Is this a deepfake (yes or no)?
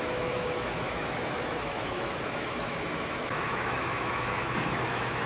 yes